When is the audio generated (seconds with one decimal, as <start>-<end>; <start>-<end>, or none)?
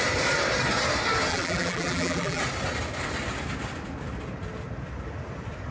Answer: 1.3-2.4